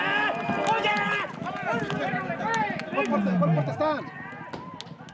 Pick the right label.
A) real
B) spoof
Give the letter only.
A